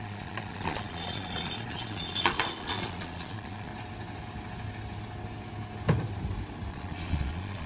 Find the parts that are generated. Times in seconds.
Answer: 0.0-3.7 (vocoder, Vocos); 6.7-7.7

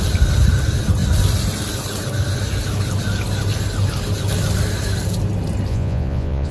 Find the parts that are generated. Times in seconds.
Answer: 5.7-6.5 (vocoder, Vocos)

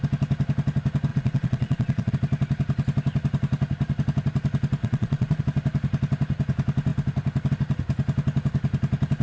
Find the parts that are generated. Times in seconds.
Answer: 1.1-2.1 (vocoder, Vocos); 4.8-5.4

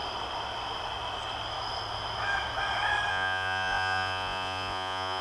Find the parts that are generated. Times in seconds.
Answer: 3.1-5.2 (vocoder, Vocos)

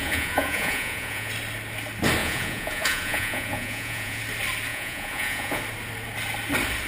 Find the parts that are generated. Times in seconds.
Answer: 0.0-1.3 (vocoder, Vocos); 2.2-4.2; 4.7-5.6

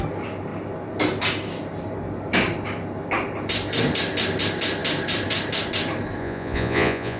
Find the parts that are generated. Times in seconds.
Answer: 6.2-7.2 (vocoder, Vocos)

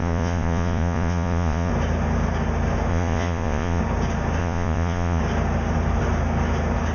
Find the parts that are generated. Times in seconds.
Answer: 0.0-1.7 (vocoder, Vocos); 2.9-3.8; 4.4-5.2

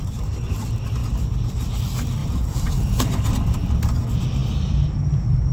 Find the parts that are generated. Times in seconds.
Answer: 2.2-3.0 (vocoder, Vocos)